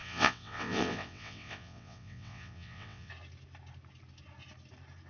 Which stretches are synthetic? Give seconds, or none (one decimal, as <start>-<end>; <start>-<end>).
0.0-3.1